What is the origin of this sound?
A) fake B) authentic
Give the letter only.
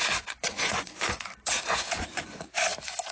A